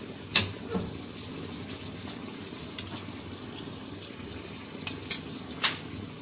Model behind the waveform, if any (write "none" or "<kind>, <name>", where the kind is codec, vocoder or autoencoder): none